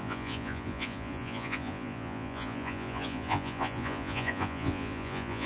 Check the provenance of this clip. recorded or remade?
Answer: remade